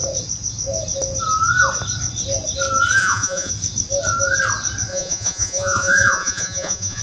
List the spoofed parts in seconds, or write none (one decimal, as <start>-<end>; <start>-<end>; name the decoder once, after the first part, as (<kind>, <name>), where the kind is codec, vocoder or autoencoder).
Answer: 3.0-3.5 (vocoder, Vocos); 4.9-7.0